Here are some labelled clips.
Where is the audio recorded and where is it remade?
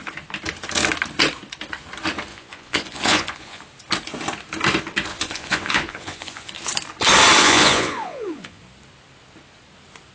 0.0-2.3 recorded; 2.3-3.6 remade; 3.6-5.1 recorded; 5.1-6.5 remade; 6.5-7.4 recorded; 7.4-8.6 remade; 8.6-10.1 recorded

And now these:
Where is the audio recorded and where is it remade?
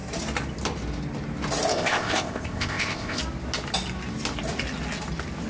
0.0-1.7 recorded; 1.7-3.2 remade; 3.2-5.5 recorded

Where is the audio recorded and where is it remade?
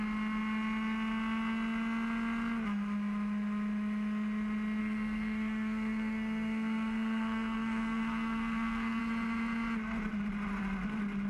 0.0-4.8 recorded; 4.8-9.0 remade; 9.0-11.3 recorded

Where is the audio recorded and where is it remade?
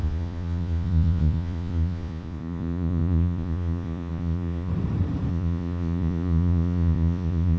0.0-4.7 remade; 4.7-5.3 recorded; 5.3-7.6 remade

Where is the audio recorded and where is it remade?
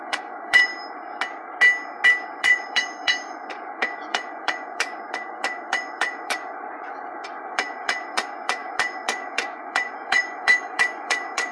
0.0-0.7 remade; 0.7-2.3 recorded; 2.3-11.5 remade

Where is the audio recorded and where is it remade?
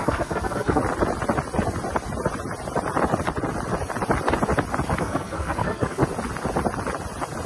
0.0-0.8 remade; 0.8-5.0 recorded; 5.0-6.0 remade; 6.0-7.5 recorded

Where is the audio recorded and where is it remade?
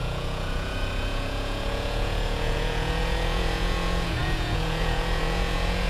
0.0-5.9 remade